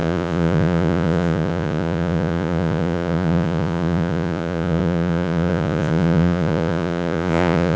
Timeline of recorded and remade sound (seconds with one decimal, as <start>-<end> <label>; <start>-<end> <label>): 0.0-7.8 remade